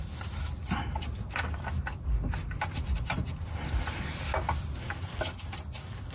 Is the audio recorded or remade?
recorded